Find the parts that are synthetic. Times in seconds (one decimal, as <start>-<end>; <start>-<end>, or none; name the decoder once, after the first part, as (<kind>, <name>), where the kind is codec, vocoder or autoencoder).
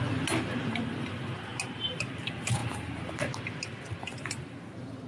none